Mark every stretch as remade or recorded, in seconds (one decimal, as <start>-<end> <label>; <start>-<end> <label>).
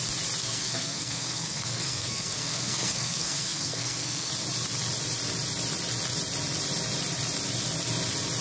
0.0-0.4 recorded; 0.4-4.3 remade; 4.3-8.4 recorded